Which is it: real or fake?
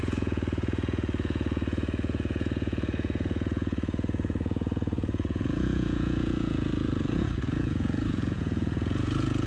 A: fake